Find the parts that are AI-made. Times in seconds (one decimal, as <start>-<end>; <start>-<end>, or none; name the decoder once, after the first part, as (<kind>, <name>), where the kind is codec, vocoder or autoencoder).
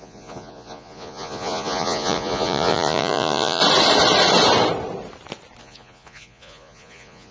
0.0-3.6 (vocoder, Vocos); 5.6-7.3